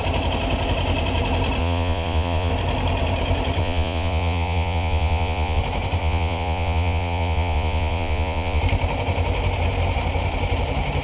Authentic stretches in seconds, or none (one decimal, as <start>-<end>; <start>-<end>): 0.0-1.6; 2.5-3.6; 5.6-6.0; 8.6-11.0